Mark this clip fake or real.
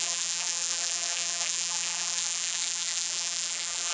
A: fake